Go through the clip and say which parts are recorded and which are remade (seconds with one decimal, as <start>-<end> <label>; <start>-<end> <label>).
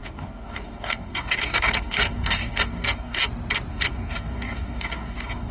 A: 0.0-3.2 remade; 3.2-3.7 recorded; 3.7-5.5 remade